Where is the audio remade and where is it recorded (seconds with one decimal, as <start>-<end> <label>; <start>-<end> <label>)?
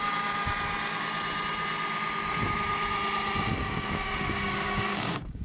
0.0-3.5 recorded; 3.5-5.4 remade